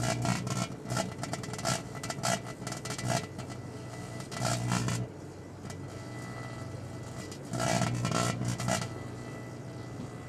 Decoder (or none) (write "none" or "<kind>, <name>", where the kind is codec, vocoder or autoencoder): none